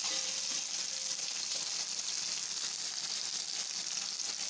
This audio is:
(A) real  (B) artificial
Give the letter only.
A